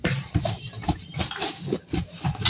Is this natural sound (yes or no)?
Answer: no